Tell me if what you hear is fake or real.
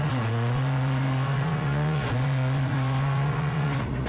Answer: fake